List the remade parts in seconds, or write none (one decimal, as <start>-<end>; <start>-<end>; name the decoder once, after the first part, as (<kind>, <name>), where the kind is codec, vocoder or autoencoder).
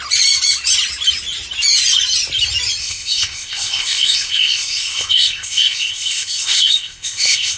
2.8-7.6 (codec, ZipCodec)